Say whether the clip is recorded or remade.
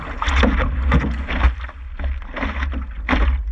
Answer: recorded